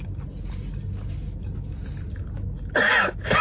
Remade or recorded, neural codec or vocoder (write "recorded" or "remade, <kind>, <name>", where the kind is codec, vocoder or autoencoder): recorded